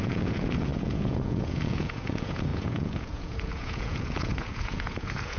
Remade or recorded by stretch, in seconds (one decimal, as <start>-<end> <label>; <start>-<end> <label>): 0.0-5.4 remade